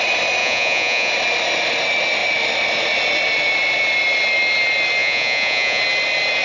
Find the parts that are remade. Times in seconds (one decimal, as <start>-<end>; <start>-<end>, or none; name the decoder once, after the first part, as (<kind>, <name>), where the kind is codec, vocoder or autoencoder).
0.4-1.1 (vocoder, Vocos); 5.0-5.8